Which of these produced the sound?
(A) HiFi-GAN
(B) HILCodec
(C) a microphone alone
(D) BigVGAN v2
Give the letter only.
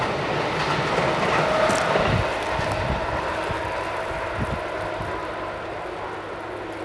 C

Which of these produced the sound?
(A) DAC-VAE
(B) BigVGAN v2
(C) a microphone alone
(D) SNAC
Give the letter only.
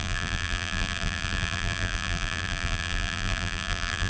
B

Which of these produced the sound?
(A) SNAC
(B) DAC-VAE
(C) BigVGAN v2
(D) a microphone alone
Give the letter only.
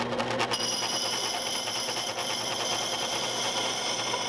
D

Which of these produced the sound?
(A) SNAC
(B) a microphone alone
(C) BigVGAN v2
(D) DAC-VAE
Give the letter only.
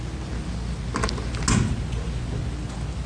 B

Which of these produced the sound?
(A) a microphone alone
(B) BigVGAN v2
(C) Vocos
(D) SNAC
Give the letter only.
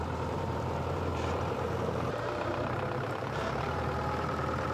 B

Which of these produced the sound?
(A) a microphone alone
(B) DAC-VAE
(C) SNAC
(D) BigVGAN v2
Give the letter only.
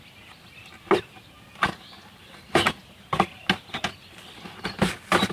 A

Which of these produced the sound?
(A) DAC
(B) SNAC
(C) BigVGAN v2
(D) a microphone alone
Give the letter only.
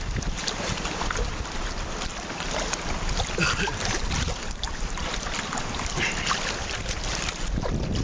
D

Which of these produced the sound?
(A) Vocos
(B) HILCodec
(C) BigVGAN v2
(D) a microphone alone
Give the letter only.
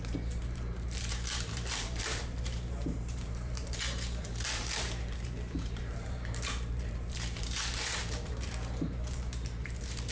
C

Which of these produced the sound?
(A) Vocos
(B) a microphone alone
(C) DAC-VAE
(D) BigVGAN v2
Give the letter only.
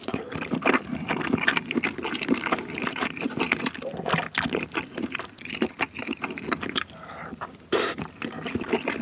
D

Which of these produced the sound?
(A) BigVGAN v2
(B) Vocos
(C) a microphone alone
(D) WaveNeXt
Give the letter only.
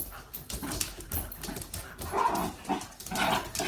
C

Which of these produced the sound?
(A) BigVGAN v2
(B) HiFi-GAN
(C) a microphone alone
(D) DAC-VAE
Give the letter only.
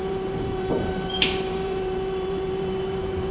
A